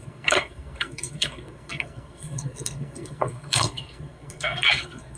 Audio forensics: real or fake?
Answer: fake